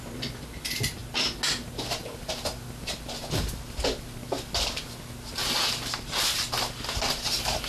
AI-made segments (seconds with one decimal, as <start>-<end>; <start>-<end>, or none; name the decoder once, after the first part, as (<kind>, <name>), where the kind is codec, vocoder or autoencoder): none